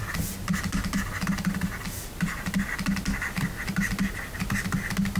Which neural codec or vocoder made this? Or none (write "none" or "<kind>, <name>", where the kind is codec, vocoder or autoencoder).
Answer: none